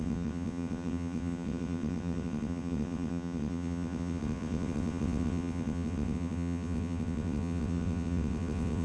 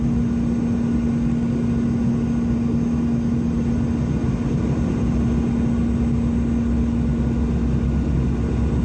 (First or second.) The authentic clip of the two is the second